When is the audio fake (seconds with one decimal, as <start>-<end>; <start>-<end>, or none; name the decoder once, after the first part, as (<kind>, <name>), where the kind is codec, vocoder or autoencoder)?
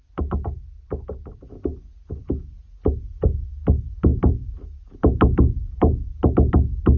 4.1-6.1 (vocoder, BigVGAN v2)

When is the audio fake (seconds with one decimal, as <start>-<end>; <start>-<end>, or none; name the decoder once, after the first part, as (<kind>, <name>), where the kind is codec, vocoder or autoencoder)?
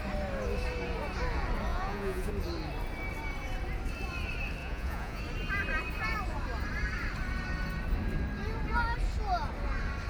1.7-2.3 (vocoder, Vocos); 4.6-5.2